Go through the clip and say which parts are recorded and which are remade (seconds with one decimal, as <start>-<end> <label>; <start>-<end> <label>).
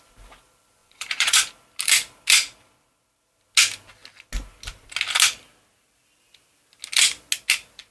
0.0-0.8 recorded; 0.8-1.5 remade; 1.5-7.9 recorded